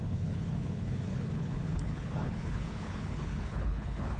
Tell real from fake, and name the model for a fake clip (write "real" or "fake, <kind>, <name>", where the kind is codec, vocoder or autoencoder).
fake, codec, HILCodec